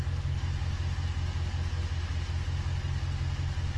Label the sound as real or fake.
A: real